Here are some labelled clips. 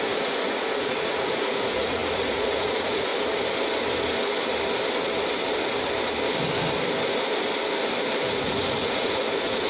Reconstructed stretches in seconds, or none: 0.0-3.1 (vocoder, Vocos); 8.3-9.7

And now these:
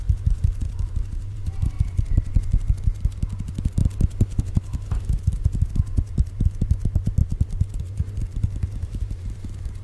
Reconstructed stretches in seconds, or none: 0.0-3.8 (vocoder, BigVGAN v2); 4.4-9.8